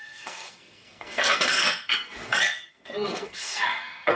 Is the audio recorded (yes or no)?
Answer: no